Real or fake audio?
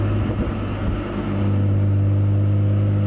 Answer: real